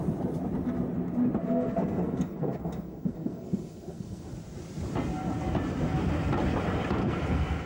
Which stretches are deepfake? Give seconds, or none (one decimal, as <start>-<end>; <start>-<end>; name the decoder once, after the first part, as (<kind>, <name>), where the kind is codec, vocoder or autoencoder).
1.4-4.3 (codec, SNAC); 7.0-7.7